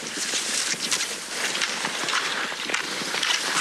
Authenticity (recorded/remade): remade